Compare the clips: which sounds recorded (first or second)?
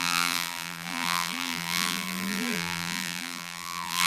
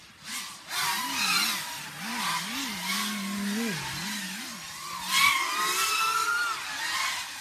second